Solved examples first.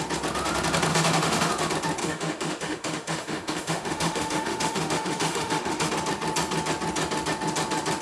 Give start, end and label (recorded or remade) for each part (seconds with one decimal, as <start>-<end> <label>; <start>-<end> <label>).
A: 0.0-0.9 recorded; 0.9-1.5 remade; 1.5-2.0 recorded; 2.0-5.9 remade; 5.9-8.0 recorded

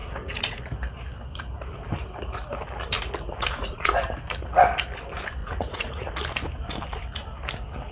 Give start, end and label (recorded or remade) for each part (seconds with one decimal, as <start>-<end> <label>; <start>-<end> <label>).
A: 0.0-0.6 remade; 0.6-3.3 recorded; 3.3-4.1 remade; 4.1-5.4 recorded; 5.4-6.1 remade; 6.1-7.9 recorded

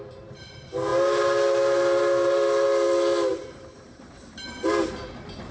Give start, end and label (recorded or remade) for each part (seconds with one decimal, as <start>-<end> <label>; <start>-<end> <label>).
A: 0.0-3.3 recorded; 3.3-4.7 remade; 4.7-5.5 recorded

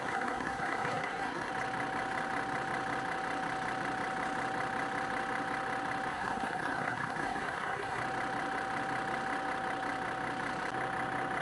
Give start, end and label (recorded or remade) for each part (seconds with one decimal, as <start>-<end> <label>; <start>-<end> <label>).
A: 0.0-1.5 remade; 1.5-6.1 recorded; 6.1-8.0 remade; 8.0-11.4 recorded